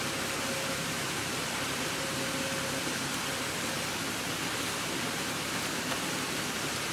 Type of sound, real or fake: real